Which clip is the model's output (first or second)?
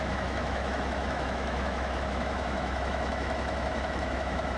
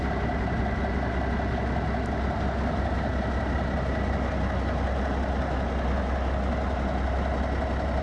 first